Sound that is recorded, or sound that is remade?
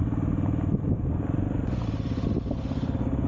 recorded